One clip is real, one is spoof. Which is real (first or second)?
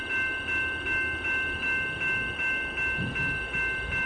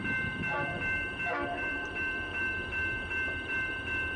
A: first